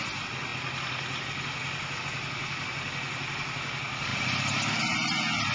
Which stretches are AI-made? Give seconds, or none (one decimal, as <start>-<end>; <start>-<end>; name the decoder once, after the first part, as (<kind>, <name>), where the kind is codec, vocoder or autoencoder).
none